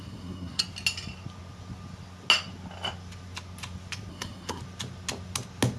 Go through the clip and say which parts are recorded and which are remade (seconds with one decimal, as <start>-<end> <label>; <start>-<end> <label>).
0.0-0.6 remade; 0.6-4.1 recorded; 4.1-4.6 remade; 4.6-5.8 recorded